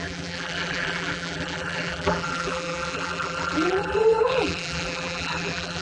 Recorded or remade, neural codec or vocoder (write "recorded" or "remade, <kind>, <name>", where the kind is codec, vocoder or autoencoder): remade, vocoder, BigVGAN v2